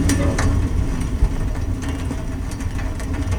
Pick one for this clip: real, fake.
fake